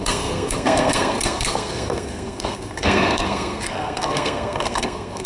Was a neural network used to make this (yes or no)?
yes